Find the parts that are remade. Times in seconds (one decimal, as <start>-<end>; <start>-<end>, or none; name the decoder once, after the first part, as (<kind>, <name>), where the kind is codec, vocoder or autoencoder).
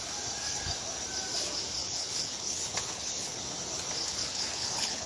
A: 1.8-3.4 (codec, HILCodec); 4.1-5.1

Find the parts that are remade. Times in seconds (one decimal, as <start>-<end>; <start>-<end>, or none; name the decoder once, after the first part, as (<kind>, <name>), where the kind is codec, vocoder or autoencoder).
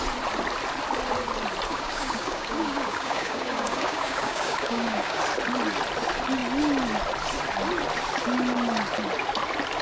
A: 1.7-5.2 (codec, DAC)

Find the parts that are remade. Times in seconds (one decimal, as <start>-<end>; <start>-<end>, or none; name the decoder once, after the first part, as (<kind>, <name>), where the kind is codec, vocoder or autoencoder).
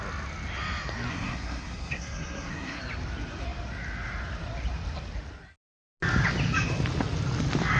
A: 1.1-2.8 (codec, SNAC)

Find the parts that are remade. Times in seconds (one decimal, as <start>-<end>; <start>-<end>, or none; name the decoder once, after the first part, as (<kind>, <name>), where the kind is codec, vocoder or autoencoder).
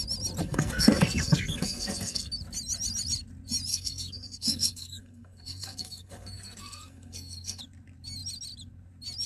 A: 0.4-2.3 (codec, SNAC); 3.7-7.6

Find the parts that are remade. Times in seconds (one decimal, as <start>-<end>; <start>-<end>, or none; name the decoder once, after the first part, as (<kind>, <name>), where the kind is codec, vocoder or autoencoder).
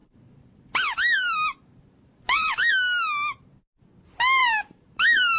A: 0.0-2.7 (vocoder, BigVGAN v2); 4.4-5.4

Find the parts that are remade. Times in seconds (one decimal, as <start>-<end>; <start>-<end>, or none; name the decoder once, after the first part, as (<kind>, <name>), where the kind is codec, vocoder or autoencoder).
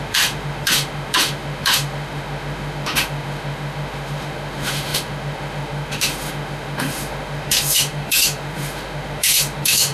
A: 0.0-9.9 (autoencoder, DAC-VAE)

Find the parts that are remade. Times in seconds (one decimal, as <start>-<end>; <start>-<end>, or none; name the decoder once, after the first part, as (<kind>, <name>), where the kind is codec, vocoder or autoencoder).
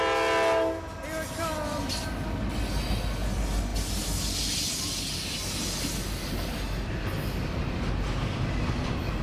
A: none